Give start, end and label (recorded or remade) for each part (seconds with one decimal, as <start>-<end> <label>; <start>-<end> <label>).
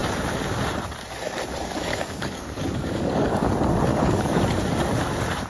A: 0.0-1.6 recorded; 1.6-3.5 remade; 3.5-3.9 recorded; 3.9-4.4 remade; 4.4-5.5 recorded